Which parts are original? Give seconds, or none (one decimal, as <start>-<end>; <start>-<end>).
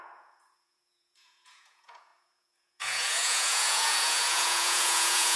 none